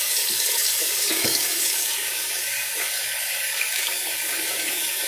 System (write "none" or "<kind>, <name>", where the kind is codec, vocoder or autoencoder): codec, DAC